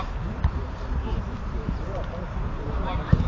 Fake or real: fake